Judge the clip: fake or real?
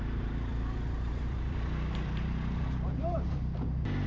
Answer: fake